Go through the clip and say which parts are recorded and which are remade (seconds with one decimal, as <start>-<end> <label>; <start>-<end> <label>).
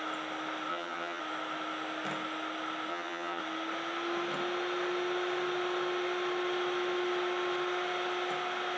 0.0-0.7 recorded; 0.7-1.2 remade; 1.2-2.9 recorded; 2.9-3.4 remade; 3.4-8.8 recorded